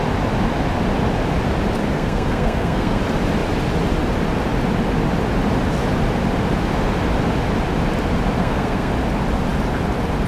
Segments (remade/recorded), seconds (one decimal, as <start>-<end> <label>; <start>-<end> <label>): 0.0-1.9 recorded; 1.9-3.0 remade; 3.0-8.4 recorded; 8.4-8.9 remade; 8.9-10.3 recorded